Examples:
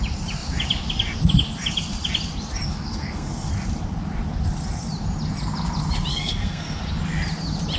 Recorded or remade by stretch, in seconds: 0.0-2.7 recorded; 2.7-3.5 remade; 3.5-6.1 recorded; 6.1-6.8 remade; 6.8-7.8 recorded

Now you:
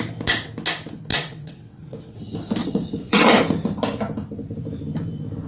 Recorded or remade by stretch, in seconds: 0.0-1.1 recorded; 1.1-2.2 remade; 2.2-2.6 recorded; 2.6-3.4 remade; 3.4-5.5 recorded

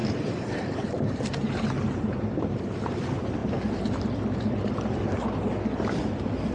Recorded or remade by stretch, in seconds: 0.0-2.8 remade; 2.8-6.5 recorded

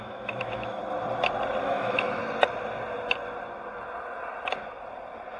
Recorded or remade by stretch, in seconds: 0.0-0.8 remade; 0.8-1.6 recorded; 1.6-2.2 remade; 2.2-5.4 recorded

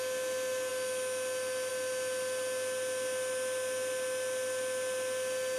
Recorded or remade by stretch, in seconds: 0.0-5.6 recorded

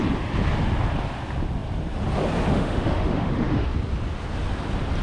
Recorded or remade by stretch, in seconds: 0.0-2.5 recorded; 2.5-3.7 remade; 3.7-5.0 recorded

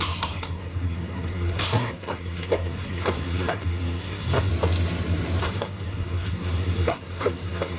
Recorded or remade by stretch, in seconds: 0.0-4.5 remade; 4.5-5.4 recorded; 5.4-7.8 remade